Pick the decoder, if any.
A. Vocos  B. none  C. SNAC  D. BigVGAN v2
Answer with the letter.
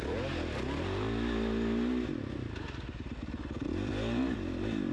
B